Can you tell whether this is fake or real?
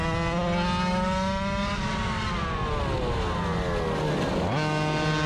real